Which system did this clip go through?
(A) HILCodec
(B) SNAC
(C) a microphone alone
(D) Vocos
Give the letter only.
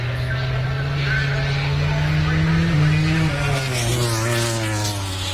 C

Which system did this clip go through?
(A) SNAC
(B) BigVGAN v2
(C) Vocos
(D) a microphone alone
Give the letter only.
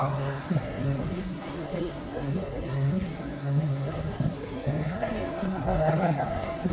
A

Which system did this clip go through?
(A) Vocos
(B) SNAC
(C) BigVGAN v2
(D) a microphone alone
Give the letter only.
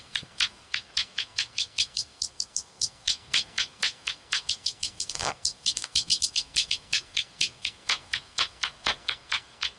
B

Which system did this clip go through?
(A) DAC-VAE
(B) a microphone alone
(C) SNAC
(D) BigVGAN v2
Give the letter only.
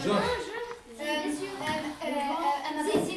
B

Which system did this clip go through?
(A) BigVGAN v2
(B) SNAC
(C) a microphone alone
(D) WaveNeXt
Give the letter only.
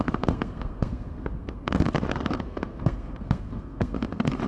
B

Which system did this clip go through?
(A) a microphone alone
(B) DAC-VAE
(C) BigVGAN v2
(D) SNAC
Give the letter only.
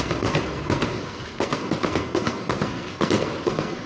D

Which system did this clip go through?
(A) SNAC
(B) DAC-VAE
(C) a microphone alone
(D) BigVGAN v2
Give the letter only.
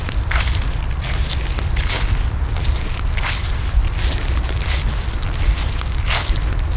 C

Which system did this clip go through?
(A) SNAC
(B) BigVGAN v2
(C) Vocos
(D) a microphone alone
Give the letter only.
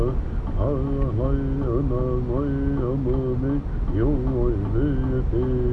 D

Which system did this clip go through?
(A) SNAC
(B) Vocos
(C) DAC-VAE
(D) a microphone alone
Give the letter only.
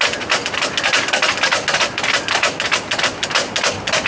D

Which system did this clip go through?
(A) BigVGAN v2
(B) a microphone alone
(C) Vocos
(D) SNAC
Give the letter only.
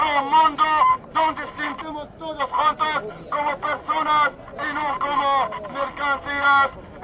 B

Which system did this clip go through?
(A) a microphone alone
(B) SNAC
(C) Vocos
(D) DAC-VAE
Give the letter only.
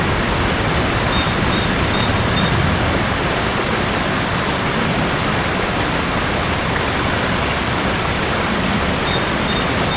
A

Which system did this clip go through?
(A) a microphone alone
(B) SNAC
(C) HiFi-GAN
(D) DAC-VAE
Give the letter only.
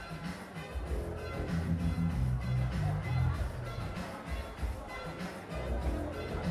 A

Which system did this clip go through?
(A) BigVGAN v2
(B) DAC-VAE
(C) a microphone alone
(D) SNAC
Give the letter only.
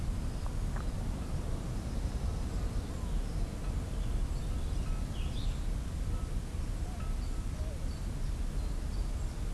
C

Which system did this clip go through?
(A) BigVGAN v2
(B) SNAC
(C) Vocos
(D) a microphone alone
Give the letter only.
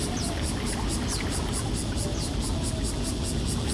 D